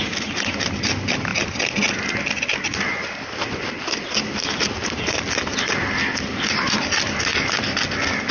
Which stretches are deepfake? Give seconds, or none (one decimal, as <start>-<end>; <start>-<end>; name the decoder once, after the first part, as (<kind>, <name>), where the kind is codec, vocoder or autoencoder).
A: none